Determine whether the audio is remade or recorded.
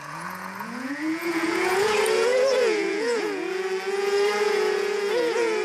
remade